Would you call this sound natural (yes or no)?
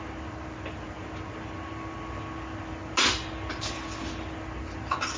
yes